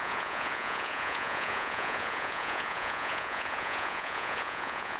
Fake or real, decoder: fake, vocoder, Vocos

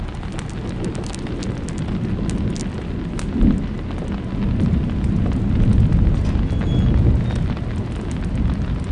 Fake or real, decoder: real